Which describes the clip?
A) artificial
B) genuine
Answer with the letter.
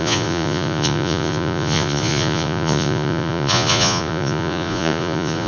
A